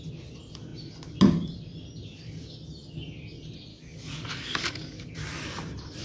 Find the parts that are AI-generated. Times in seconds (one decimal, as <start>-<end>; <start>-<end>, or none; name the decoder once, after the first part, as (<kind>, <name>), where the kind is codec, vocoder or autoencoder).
3.7-5.1 (codec, DAC)